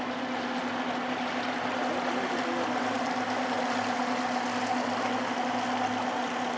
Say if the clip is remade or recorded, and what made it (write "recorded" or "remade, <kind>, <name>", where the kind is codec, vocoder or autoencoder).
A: recorded